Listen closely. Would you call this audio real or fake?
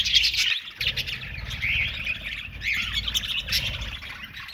real